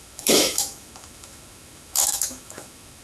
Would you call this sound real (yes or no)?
no